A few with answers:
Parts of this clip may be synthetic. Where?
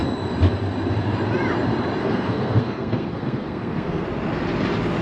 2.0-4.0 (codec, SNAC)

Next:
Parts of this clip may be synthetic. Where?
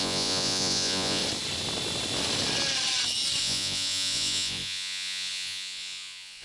0.0-1.2 (vocoder, Vocos); 3.4-6.4